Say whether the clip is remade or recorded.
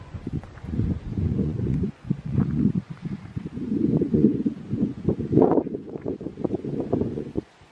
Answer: remade